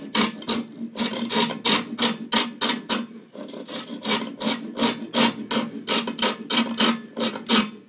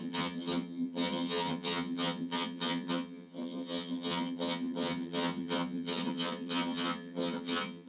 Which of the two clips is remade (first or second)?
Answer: second